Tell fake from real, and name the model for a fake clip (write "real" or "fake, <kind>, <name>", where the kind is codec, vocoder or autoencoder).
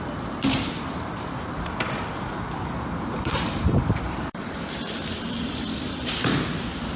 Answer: fake, vocoder, BigVGAN v2